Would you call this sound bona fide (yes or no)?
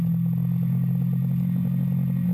yes